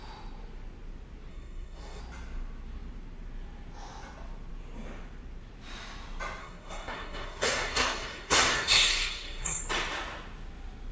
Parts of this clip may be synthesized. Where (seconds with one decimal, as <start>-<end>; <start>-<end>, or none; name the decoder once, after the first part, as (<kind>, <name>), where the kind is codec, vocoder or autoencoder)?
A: 1.3-2.0 (codec, SNAC); 6.4-9.6